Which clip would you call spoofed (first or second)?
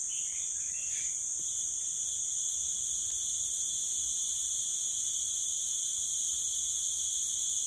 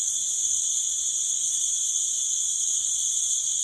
second